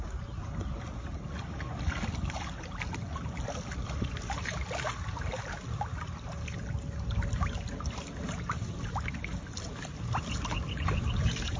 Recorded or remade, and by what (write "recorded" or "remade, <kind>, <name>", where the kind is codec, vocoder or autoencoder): recorded